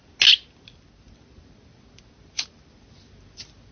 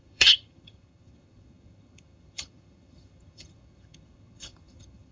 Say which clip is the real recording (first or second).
first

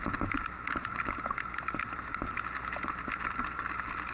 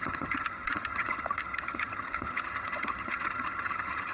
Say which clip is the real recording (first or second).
first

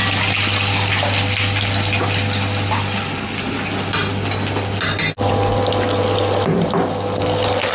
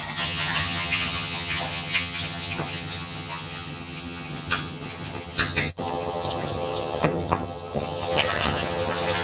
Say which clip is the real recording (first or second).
first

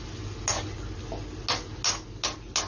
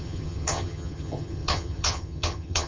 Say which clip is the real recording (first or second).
first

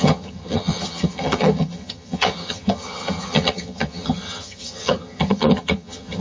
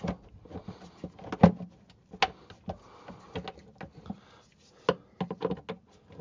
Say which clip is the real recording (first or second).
second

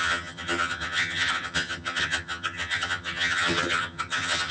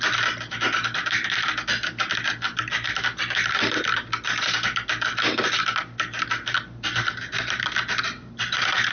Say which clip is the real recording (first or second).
second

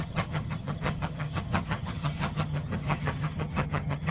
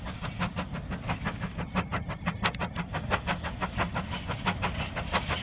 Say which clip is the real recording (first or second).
second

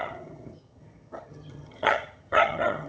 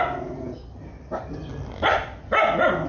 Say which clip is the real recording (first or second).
second